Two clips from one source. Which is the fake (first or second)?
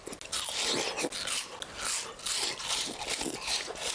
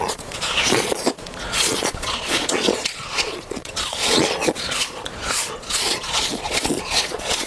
second